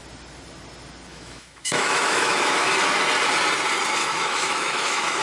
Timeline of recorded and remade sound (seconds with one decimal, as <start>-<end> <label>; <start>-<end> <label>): 0.0-1.1 recorded; 1.1-2.7 remade; 2.7-4.0 recorded; 4.0-5.2 remade